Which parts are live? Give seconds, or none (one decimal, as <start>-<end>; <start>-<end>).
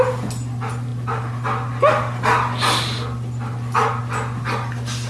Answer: 0.0-5.1